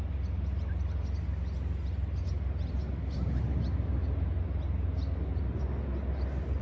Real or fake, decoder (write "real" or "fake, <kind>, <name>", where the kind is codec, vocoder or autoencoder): real